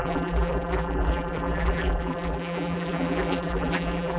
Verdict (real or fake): fake